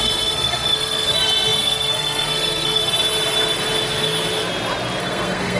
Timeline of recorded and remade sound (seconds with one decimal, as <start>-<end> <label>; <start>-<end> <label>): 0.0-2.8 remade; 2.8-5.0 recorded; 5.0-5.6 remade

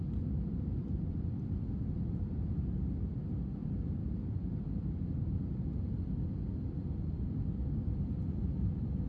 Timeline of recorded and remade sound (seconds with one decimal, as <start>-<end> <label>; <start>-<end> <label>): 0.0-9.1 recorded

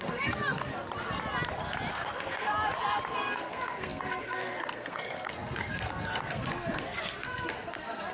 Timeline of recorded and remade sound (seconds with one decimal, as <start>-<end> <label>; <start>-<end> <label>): 0.0-0.7 remade; 0.7-1.9 recorded; 1.9-2.5 remade; 2.5-3.1 recorded; 3.1-8.1 remade

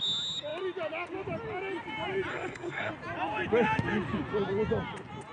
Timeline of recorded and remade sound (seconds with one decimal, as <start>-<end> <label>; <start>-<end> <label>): 0.0-2.3 recorded; 2.3-2.9 remade; 2.9-5.3 recorded

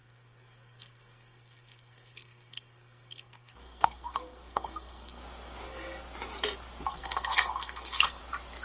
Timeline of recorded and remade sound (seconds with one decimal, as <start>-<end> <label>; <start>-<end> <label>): 0.0-5.2 remade; 5.2-6.9 recorded; 6.9-8.2 remade; 8.2-8.6 recorded

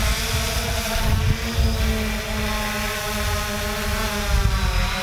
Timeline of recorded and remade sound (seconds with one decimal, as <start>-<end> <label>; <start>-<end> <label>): 0.0-5.0 recorded

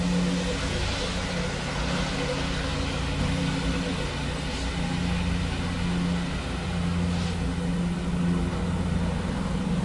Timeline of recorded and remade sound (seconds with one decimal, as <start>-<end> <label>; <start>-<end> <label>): 0.0-9.8 recorded

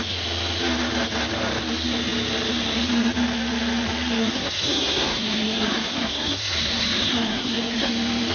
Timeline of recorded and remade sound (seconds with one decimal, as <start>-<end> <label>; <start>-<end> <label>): 0.0-4.2 recorded; 4.2-7.9 remade; 7.9-8.3 recorded